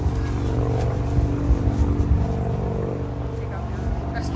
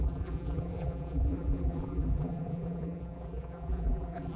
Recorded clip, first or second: first